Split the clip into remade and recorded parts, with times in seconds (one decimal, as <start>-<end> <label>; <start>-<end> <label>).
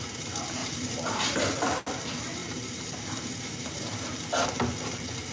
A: 0.0-0.6 recorded; 0.6-1.4 remade; 1.4-2.4 recorded; 2.4-4.1 remade; 4.1-5.3 recorded